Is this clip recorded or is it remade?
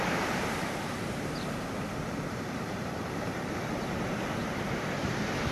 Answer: remade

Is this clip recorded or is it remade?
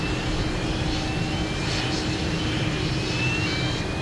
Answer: recorded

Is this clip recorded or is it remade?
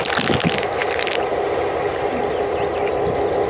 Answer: recorded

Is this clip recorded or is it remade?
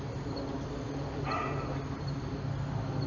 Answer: recorded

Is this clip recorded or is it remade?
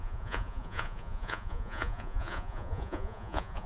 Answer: remade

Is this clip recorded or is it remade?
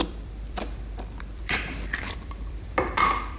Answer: remade